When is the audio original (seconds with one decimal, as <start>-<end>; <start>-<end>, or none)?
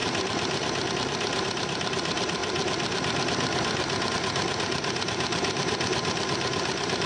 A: 0.0-0.9; 2.4-4.1